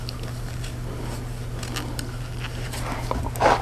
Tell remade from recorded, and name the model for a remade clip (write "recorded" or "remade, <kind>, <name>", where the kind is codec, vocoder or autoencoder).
recorded